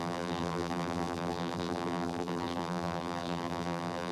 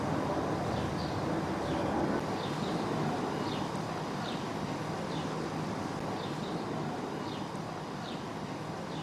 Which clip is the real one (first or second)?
second